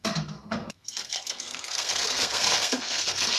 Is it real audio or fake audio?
fake